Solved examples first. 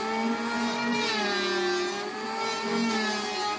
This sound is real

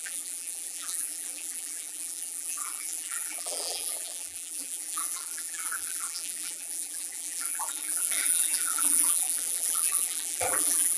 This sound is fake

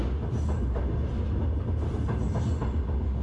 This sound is real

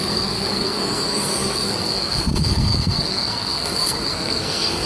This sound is fake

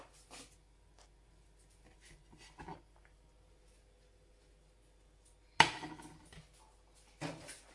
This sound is real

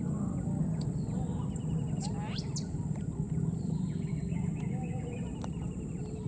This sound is real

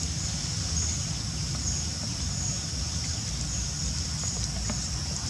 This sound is real